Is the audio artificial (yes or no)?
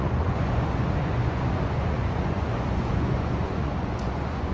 yes